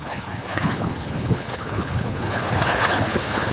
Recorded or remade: remade